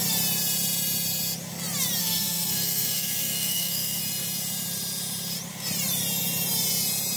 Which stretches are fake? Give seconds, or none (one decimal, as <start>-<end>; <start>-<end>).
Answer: 2.0-4.0